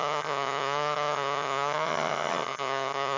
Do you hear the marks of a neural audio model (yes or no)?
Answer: yes